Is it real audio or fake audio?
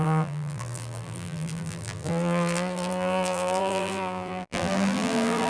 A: fake